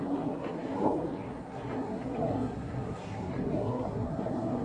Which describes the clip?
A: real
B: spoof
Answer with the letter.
B